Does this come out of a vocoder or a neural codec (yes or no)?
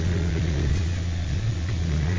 yes